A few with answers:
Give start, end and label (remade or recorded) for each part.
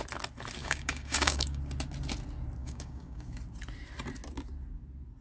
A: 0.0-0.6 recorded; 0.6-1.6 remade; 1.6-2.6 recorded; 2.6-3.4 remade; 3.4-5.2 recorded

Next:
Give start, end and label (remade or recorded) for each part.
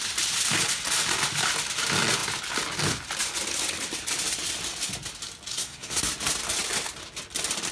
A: 0.0-5.5 recorded; 5.5-6.0 remade; 6.0-7.7 recorded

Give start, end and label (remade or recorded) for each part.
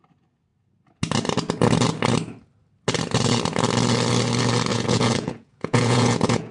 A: 0.0-4.7 recorded; 4.7-6.5 remade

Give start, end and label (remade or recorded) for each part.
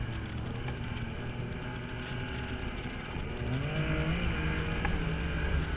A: 0.0-2.6 recorded; 2.6-3.3 remade; 3.3-5.8 recorded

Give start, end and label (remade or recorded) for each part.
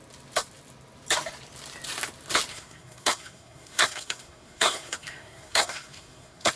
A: 0.0-2.5 recorded; 2.5-6.5 remade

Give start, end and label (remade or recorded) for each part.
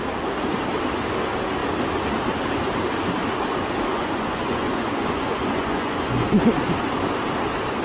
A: 0.0-3.9 recorded; 3.9-6.4 remade; 6.4-7.8 recorded